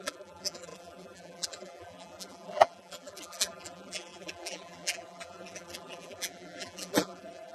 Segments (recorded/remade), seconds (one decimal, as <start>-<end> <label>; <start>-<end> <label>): 0.0-7.5 remade